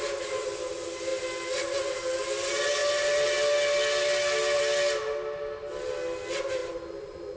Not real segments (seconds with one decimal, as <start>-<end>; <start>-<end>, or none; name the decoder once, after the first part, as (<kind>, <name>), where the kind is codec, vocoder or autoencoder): none